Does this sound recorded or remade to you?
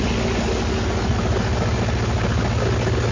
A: recorded